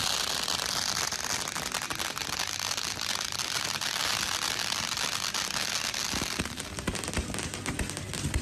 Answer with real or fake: real